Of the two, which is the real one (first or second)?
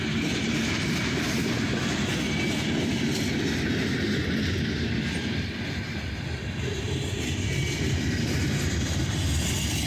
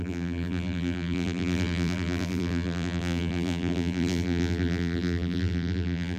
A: first